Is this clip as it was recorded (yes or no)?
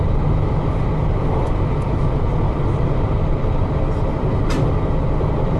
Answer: yes